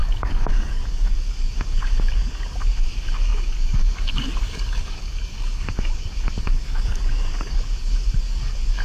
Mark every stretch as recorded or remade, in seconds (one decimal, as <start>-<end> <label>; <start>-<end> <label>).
0.0-8.8 remade